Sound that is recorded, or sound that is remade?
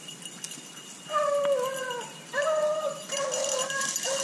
recorded